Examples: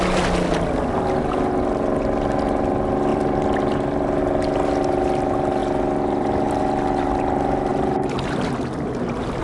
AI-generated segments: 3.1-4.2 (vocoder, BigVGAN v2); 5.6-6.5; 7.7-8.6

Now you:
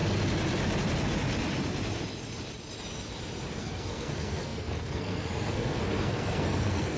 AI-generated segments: 3.6-7.0 (codec, SNAC)

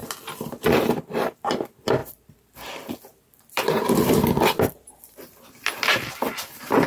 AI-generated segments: 0.0-6.9 (vocoder, BigVGAN v2)

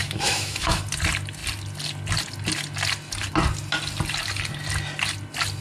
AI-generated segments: 0.0-0.8 (autoencoder, DAC-VAE)

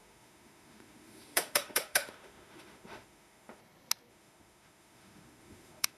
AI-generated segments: 0.0-3.6 (autoencoder, DAC-VAE); 4.1-6.0

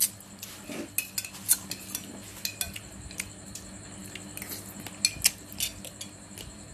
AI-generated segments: none

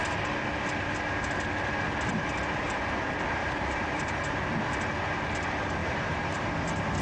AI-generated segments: 3.4-4.2 (vocoder, BigVGAN v2)